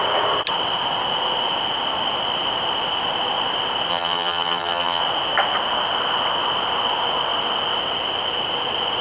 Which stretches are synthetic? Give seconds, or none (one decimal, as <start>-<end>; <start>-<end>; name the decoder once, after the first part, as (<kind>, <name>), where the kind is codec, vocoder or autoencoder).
3.9-5.0 (vocoder, HiFi-GAN)